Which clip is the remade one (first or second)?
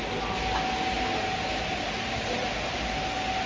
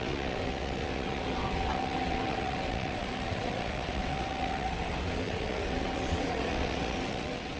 second